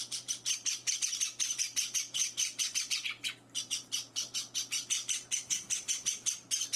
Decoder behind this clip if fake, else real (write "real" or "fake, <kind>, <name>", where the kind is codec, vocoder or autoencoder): fake, vocoder, BigVGAN v2